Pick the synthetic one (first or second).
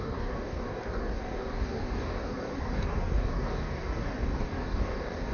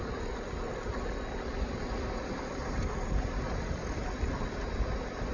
first